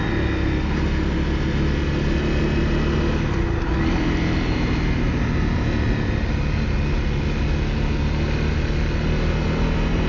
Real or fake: real